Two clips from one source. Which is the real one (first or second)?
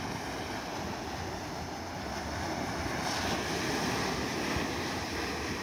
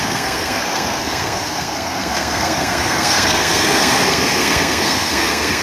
first